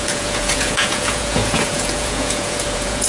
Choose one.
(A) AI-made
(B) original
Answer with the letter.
A